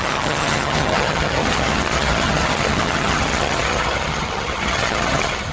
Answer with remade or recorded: remade